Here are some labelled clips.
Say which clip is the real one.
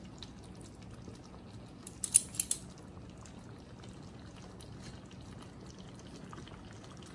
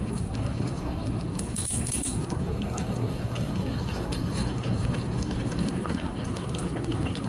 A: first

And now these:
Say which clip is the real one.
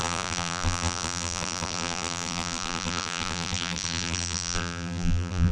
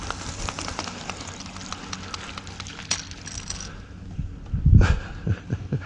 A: second